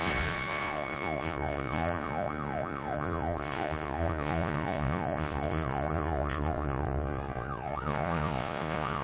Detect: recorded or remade remade